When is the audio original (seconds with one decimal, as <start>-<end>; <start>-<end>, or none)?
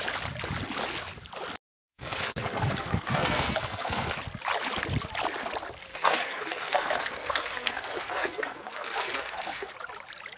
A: 0.0-1.8; 4.2-5.9; 9.7-10.4